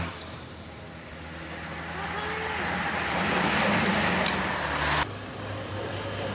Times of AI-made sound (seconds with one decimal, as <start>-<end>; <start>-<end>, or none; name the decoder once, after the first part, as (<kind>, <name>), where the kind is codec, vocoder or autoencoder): none